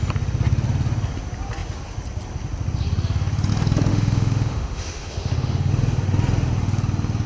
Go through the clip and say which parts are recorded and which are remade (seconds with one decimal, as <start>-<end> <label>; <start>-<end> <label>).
0.0-3.9 recorded; 3.9-5.7 remade; 5.7-7.3 recorded